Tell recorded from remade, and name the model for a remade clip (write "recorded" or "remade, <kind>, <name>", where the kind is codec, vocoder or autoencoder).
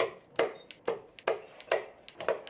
recorded